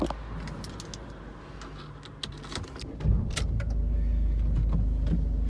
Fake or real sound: real